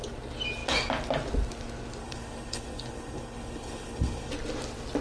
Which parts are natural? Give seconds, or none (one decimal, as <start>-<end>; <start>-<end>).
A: 0.0-2.0; 4.3-5.0

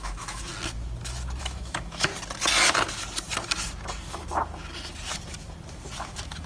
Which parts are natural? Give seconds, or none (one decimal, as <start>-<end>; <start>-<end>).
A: 0.5-1.4; 2.1-6.0

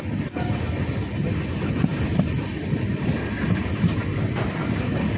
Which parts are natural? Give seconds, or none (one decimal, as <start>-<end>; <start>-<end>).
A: 0.0-5.2